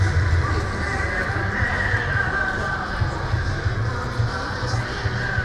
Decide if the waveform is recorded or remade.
recorded